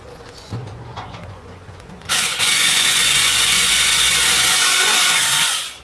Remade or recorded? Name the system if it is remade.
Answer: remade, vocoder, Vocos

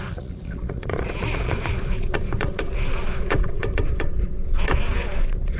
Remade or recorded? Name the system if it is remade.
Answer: remade, vocoder, Vocos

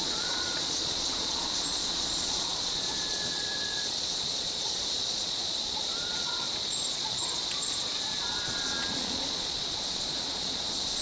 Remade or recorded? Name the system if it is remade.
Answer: remade, vocoder, Vocos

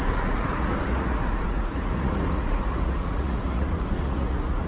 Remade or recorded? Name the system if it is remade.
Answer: remade, vocoder, Vocos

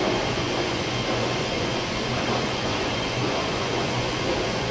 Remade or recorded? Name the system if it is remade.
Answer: remade, vocoder, Vocos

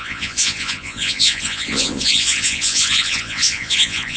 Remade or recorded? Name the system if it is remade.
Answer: remade, vocoder, Vocos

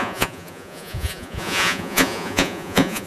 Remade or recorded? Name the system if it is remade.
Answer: remade, vocoder, Vocos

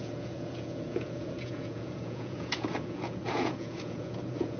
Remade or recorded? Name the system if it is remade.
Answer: remade, vocoder, Vocos